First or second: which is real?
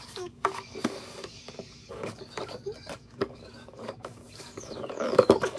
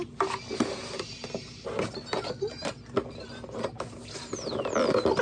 second